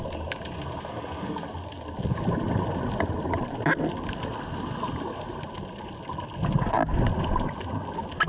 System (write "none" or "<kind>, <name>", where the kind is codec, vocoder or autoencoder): none